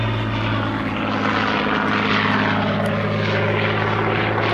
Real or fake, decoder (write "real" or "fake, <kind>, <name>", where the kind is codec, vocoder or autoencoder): real